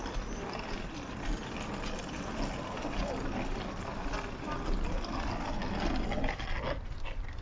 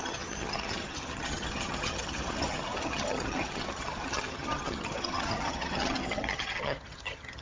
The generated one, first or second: second